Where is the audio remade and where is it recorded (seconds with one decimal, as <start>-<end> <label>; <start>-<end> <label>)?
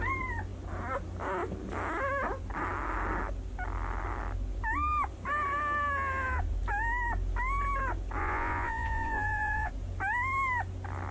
0.0-8.2 recorded; 8.2-9.7 remade; 9.7-11.1 recorded